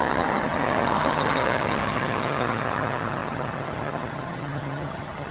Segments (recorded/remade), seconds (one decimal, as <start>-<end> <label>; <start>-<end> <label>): 0.0-5.3 remade

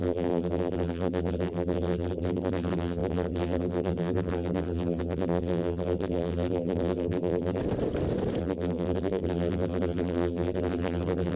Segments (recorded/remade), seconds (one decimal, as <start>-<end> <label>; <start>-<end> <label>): 0.0-7.6 remade; 7.6-8.4 recorded; 8.4-11.4 remade

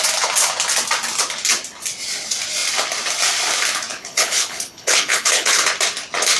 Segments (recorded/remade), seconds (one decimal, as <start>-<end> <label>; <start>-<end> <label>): 0.0-3.9 recorded; 3.9-5.6 remade; 5.6-6.4 recorded

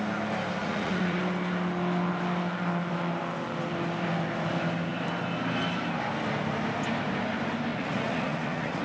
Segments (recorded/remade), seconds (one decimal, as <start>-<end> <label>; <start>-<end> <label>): 0.0-0.6 recorded; 0.6-1.2 remade; 1.2-7.7 recorded; 7.7-8.8 remade